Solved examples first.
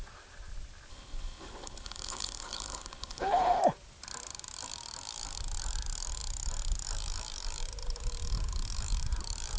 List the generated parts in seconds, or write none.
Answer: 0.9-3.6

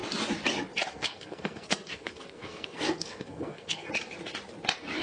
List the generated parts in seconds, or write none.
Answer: 0.9-3.9

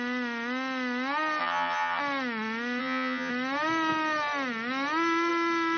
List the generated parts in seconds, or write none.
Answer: 1.4-2.0; 2.8-3.3

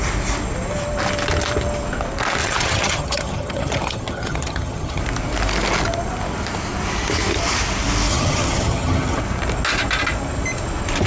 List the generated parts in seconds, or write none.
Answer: 2.4-5.0; 8.1-9.2

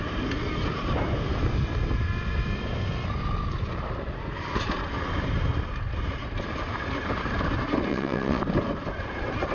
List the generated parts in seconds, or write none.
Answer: 7.9-8.4